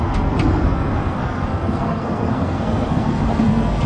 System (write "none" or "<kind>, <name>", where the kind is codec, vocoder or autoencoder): codec, SNAC